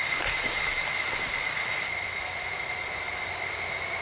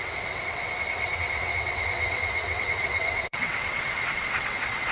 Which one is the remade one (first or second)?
second